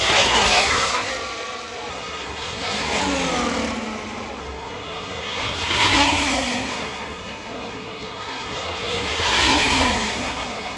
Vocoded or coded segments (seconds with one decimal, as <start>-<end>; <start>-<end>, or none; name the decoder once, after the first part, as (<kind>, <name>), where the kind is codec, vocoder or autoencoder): 0.0-1.1 (codec, SNAC); 1.9-3.0; 4.4-10.8